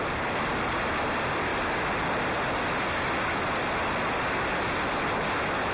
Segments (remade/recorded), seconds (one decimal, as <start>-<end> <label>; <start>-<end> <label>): 0.0-5.7 recorded